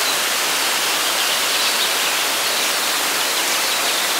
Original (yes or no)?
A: yes